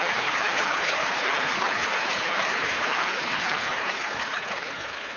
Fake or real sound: fake